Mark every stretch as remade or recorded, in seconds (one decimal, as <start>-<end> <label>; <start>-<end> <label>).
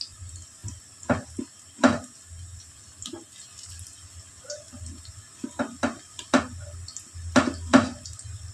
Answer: 0.0-8.5 recorded